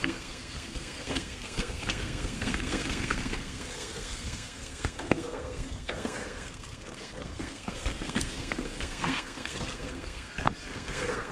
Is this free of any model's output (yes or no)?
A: no